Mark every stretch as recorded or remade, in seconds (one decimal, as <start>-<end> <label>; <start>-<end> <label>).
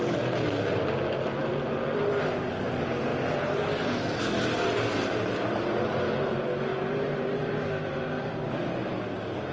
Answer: 0.0-6.7 recorded; 6.7-8.3 remade; 8.3-9.5 recorded